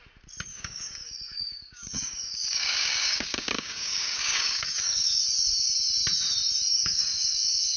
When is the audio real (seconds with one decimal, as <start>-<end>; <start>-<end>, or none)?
0.0-0.5; 5.2-6.7